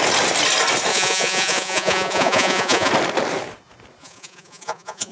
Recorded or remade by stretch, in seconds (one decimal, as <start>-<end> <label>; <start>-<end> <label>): 0.0-0.9 recorded; 0.9-2.9 remade; 2.9-4.0 recorded; 4.0-5.1 remade